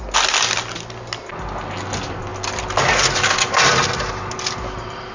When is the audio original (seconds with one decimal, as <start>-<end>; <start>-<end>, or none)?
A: 0.0-5.1